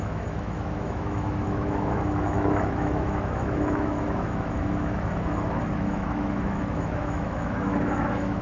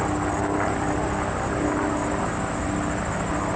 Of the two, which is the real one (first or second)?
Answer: second